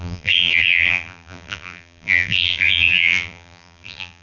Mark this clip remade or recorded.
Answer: remade